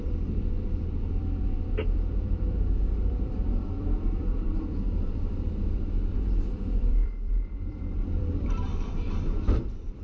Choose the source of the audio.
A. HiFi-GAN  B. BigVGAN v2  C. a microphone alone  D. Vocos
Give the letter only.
B